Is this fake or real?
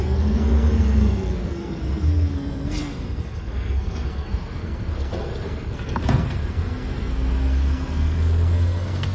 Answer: fake